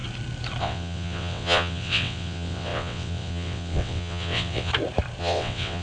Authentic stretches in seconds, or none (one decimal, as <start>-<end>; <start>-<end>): 0.0-0.6; 4.7-5.2